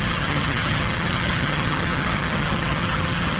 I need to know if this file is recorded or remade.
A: remade